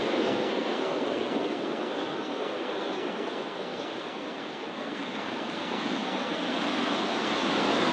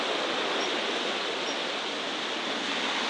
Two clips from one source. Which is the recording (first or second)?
second